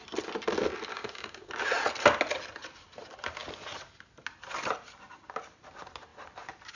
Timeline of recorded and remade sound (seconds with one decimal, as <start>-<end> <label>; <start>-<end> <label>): 0.0-0.9 recorded; 0.9-1.5 remade; 1.5-6.8 recorded